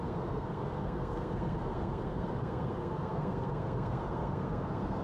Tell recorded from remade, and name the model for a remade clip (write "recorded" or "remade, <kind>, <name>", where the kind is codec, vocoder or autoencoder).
remade, codec, SNAC